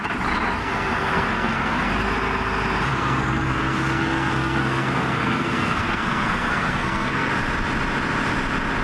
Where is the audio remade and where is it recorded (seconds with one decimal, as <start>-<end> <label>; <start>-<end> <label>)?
0.0-0.6 recorded; 0.6-1.9 remade; 1.9-2.9 recorded; 2.9-7.3 remade; 7.3-8.8 recorded